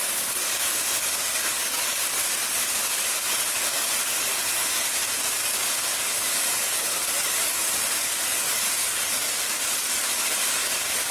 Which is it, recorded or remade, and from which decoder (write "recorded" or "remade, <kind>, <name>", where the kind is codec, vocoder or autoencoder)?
remade, codec, DAC